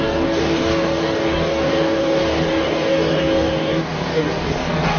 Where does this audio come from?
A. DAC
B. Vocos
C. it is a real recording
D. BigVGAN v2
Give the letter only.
A